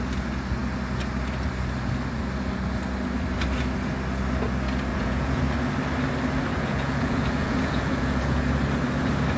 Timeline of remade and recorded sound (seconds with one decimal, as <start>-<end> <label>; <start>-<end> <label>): 0.0-4.9 recorded; 4.9-5.4 remade; 5.4-6.5 recorded; 6.5-8.4 remade; 8.4-9.4 recorded